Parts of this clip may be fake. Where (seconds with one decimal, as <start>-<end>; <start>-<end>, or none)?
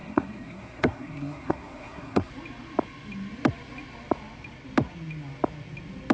0.0-2.3